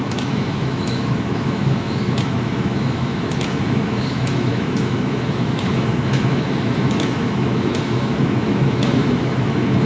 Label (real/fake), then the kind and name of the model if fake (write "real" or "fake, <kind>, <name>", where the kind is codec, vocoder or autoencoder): fake, autoencoder, DAC-VAE